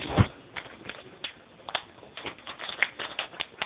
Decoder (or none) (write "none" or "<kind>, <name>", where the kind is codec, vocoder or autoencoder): none